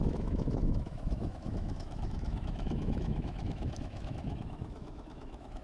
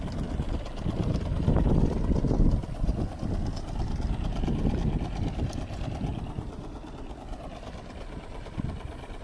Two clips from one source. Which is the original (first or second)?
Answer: second